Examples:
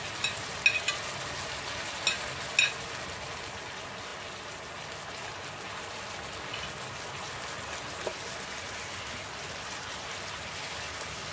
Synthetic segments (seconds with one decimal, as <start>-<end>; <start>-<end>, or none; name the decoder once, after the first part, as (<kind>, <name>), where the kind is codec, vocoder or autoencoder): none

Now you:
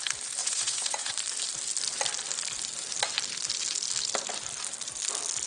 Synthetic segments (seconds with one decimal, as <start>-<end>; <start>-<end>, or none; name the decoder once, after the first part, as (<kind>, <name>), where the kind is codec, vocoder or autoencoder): 0.4-1.1 (vocoder, Vocos)

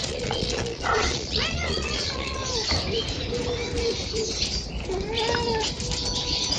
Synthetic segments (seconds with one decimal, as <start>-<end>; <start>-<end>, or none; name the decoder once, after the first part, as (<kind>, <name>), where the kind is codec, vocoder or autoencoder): 0.0-2.4 (vocoder, Vocos)

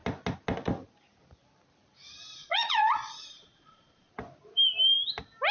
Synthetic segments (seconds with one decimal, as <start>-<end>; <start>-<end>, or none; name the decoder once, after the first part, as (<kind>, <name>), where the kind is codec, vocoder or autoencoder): 2.4-4.1 (vocoder, Vocos)

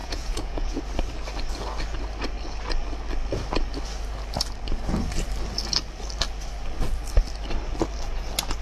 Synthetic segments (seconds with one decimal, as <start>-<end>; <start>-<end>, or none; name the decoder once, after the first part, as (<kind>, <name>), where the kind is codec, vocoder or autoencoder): 0.0-0.8 (vocoder, Vocos)